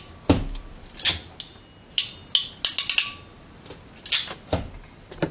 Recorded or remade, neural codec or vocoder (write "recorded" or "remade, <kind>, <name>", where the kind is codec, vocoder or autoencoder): recorded